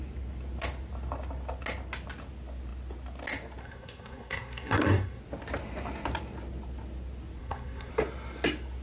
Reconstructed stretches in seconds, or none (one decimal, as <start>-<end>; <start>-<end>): 3.6-5.2; 7.4-7.9